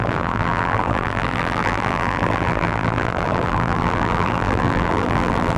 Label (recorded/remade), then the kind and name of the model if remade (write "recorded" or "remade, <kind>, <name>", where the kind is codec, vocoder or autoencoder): remade, vocoder, BigVGAN v2